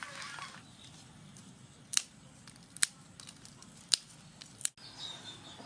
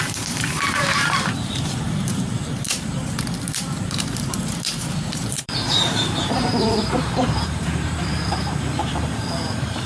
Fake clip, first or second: second